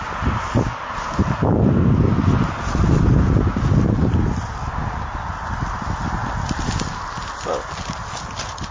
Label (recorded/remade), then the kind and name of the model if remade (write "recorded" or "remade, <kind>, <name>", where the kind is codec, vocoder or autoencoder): recorded